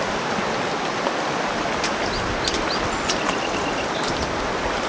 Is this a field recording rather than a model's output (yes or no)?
yes